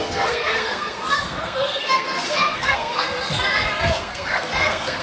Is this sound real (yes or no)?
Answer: no